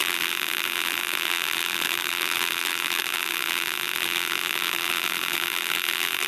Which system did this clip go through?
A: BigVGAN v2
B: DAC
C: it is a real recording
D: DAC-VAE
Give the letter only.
A